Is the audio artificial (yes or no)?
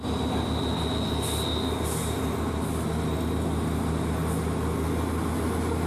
no